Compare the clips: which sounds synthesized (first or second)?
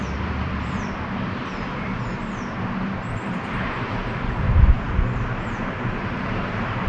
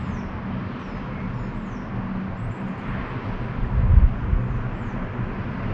first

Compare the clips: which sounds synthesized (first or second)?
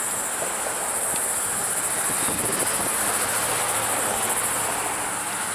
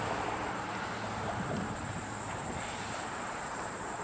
second